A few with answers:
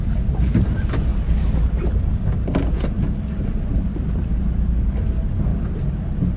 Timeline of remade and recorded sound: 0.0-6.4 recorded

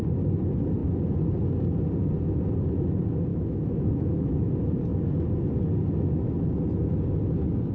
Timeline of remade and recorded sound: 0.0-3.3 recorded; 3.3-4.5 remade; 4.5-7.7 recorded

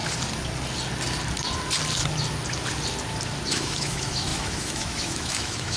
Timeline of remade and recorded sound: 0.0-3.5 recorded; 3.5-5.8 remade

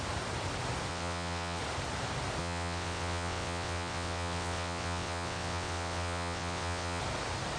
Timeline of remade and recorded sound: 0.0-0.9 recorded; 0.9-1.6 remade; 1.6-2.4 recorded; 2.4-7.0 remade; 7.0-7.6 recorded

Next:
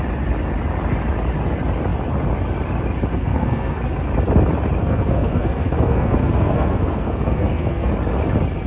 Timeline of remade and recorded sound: 0.0-3.1 recorded; 3.1-3.8 remade; 3.8-4.8 recorded; 4.8-7.9 remade; 7.9-8.7 recorded